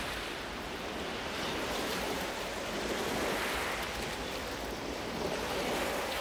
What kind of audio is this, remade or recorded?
recorded